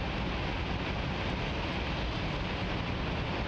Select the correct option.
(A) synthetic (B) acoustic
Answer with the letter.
B